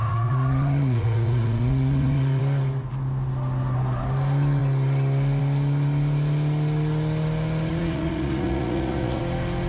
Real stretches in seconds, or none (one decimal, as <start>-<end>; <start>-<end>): 2.4-7.7; 9.2-9.7